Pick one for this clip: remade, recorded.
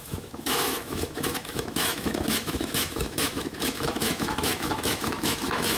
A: remade